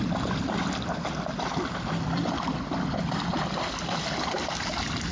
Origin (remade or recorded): recorded